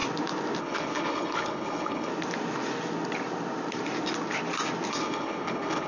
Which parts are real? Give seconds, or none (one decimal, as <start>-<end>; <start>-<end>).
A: 0.0-0.6; 2.1-4.9